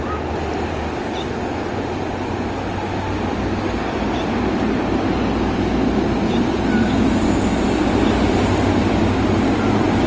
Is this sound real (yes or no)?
yes